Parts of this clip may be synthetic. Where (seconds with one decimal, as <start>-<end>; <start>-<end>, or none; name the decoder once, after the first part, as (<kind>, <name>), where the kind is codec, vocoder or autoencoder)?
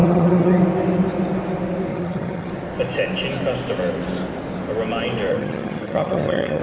0.0-0.6 (vocoder, HiFi-GAN); 1.9-2.5; 5.3-6.6